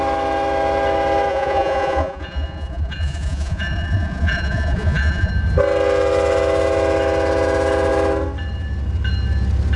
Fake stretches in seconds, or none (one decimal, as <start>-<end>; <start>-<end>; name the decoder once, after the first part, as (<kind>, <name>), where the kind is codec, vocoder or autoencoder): 1.3-5.3 (vocoder, Vocos)